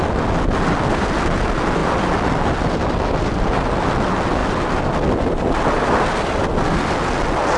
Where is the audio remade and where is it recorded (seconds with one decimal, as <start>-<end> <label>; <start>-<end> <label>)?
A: 0.0-7.6 recorded